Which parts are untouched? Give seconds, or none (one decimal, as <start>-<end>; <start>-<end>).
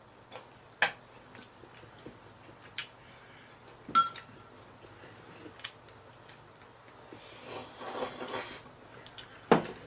0.0-9.9